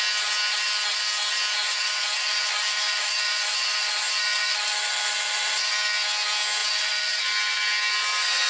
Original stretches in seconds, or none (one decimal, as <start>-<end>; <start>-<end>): 0.0-1.6; 5.7-6.6; 7.2-8.5